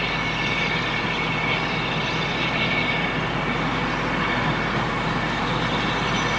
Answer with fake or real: real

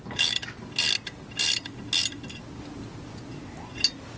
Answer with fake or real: real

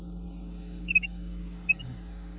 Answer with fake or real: fake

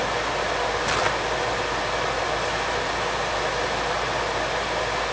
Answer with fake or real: real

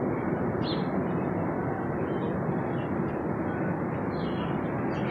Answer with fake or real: real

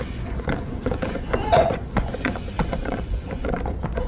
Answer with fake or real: fake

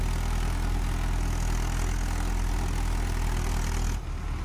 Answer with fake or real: real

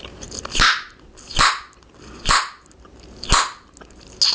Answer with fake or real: real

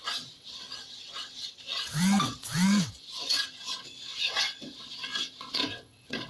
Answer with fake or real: fake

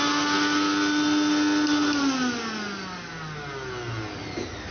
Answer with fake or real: real